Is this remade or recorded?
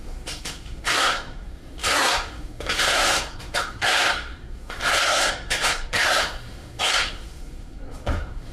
remade